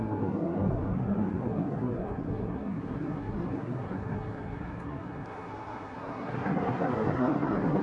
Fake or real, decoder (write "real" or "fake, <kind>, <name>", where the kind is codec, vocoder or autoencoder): fake, codec, SNAC